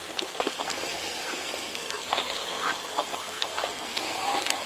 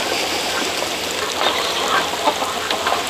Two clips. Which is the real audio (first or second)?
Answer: second